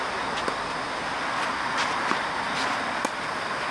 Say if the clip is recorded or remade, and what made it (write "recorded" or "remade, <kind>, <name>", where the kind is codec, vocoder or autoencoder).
recorded